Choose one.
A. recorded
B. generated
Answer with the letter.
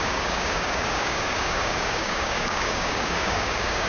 B